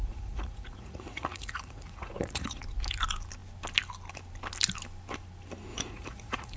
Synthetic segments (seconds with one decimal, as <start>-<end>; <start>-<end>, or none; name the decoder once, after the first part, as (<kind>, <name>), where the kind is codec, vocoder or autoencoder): 0.0-2.6 (vocoder, Vocos); 5.7-6.6